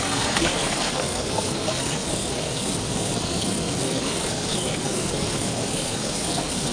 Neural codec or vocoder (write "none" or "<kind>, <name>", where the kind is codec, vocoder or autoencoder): codec, SNAC